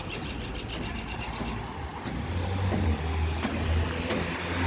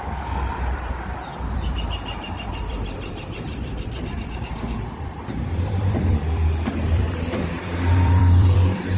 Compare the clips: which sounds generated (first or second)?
second